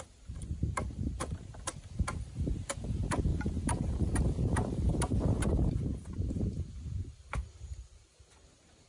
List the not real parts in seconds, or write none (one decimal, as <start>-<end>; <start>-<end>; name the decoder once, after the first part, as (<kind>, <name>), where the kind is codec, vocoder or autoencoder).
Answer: 0.0-8.9 (vocoder, BigVGAN v2)